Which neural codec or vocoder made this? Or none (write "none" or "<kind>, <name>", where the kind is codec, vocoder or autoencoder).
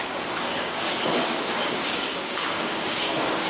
codec, DAC